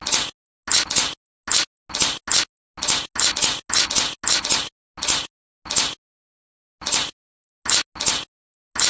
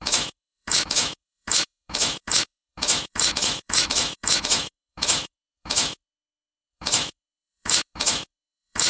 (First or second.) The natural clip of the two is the first